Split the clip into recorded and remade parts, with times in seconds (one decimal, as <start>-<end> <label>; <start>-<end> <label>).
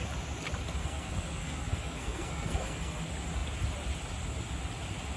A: 0.0-0.8 recorded; 0.8-3.0 remade; 3.0-5.2 recorded